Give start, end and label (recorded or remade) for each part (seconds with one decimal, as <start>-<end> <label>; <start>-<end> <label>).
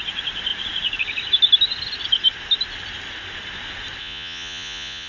0.0-4.0 recorded; 4.0-5.1 remade